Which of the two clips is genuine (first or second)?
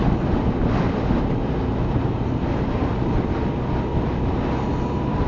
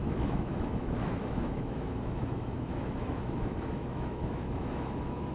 first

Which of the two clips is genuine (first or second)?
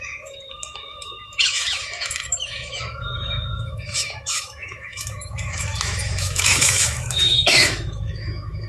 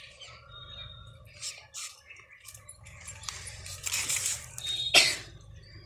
second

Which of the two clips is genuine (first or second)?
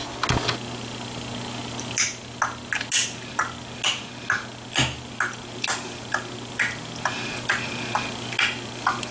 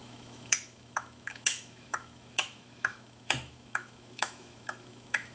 first